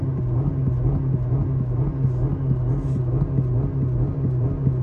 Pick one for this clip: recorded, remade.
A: recorded